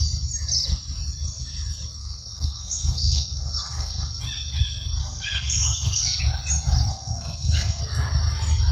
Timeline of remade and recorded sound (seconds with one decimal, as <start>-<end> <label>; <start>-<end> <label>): 0.0-2.0 recorded; 2.0-4.2 remade; 4.2-5.0 recorded; 5.0-6.2 remade; 6.2-6.9 recorded; 6.9-7.8 remade; 7.8-8.7 recorded